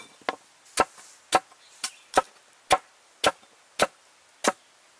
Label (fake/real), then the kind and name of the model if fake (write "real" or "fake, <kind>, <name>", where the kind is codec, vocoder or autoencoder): real